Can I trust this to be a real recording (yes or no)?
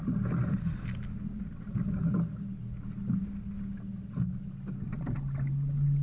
yes